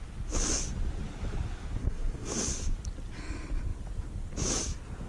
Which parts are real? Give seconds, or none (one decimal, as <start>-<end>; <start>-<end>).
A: 0.0-1.8; 2.4-5.1